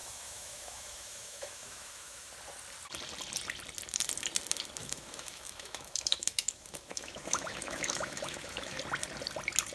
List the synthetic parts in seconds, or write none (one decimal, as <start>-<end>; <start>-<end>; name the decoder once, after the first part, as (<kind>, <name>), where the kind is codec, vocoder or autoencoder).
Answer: 0.0-2.3 (autoencoder, DAC-VAE); 4.8-8.8